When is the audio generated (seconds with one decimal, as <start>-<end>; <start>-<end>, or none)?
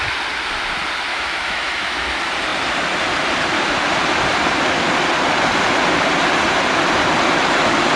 1.1-2.0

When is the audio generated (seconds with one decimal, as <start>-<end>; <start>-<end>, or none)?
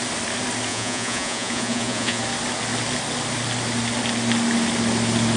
0.7-2.2